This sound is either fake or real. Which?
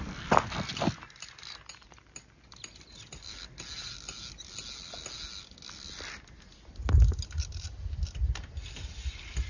real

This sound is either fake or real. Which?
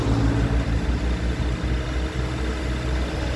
real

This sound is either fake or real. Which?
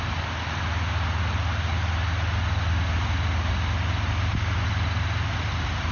real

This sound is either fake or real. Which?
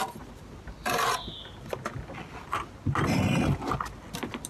real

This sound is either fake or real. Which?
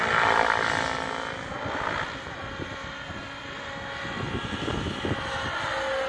real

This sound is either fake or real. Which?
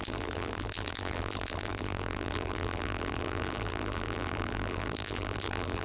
fake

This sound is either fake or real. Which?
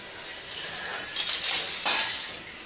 real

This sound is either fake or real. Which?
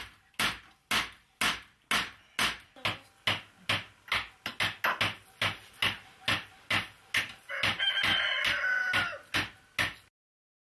real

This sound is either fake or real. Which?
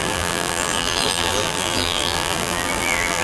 fake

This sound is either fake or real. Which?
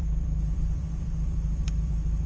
fake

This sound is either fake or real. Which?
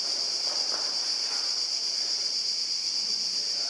fake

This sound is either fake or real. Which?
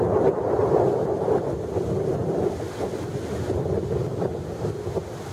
real